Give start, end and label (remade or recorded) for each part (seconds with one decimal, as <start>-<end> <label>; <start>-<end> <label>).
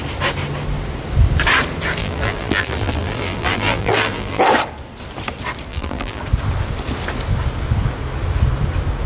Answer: 0.0-2.0 recorded; 2.0-4.4 remade; 4.4-5.7 recorded; 5.7-6.2 remade; 6.2-9.1 recorded